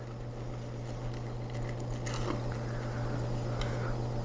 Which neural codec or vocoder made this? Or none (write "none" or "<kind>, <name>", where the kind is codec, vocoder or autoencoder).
none